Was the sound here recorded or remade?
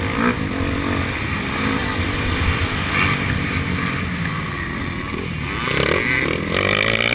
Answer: recorded